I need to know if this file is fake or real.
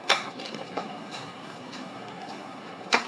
fake